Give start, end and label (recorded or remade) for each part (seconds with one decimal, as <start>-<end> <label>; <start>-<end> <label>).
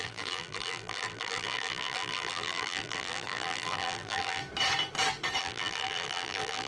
0.0-4.4 remade; 4.4-5.4 recorded; 5.4-6.7 remade